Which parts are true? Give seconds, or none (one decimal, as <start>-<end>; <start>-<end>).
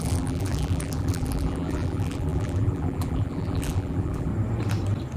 4.3-5.2